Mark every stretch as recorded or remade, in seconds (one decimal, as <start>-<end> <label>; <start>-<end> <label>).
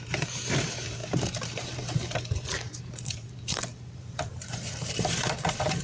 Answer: 0.0-5.8 remade